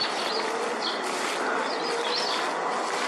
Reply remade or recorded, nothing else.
recorded